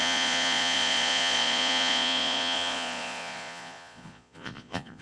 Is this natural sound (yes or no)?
no